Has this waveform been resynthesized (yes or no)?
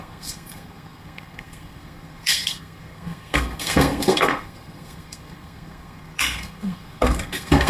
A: yes